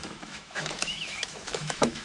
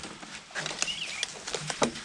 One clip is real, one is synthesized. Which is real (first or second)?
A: second